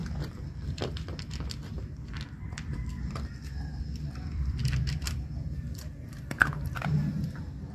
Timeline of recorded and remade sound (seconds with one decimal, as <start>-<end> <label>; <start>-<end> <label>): 0.0-7.7 remade